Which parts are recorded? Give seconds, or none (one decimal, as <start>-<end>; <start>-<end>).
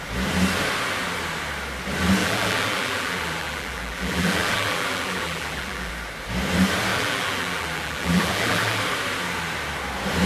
0.0-2.2; 5.9-6.9; 8.8-10.3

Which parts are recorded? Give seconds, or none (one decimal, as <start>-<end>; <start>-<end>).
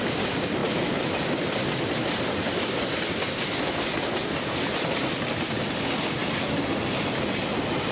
0.0-7.9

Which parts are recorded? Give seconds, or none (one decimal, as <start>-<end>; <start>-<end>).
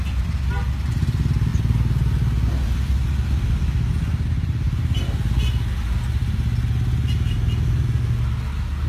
0.0-8.9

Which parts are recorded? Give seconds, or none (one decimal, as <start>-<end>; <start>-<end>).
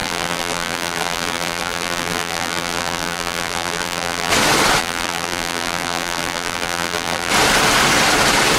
4.3-4.8; 7.3-8.6